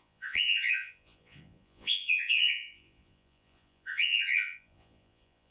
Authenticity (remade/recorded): remade